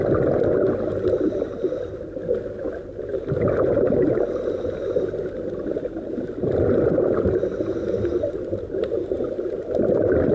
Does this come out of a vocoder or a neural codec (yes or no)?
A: no